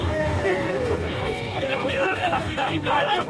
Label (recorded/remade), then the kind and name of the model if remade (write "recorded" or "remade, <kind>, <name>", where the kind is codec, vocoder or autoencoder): remade, codec, DAC